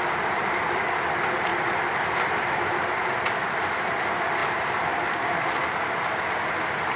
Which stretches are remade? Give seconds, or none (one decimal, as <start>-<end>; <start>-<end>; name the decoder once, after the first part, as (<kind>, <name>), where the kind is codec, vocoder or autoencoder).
1.5-2.6 (vocoder, BigVGAN v2); 4.4-6.0